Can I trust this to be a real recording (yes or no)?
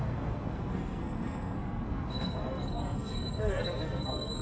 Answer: no